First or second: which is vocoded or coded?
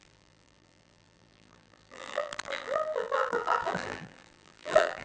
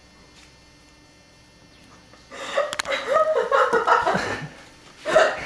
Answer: first